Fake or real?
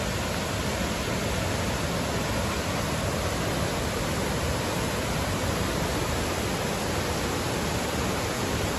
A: real